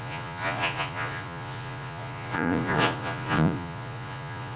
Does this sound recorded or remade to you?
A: remade